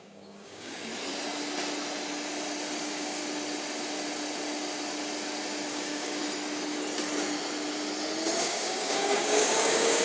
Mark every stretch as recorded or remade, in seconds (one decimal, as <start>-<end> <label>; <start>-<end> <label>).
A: 0.0-0.9 remade; 0.9-2.8 recorded; 2.8-3.2 remade; 3.2-5.7 recorded; 5.7-6.2 remade; 6.2-8.4 recorded; 8.4-10.0 remade